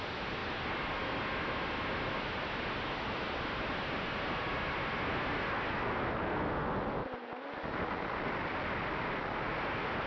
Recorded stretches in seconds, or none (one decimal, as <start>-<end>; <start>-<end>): 0.0-10.1

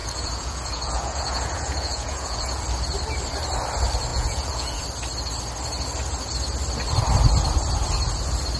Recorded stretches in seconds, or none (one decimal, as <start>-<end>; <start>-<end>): 2.6-4.1; 4.8-8.6

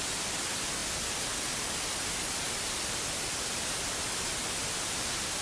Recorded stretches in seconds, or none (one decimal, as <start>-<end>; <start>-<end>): 0.0-5.4

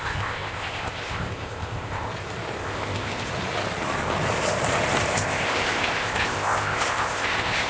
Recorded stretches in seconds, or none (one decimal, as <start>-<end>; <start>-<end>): 2.1-2.6; 3.3-5.1